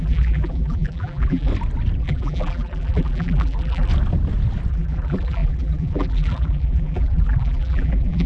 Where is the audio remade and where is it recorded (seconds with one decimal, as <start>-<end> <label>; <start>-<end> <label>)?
0.0-1.5 remade; 1.5-2.0 recorded; 2.0-3.9 remade; 3.9-4.7 recorded; 4.7-8.3 remade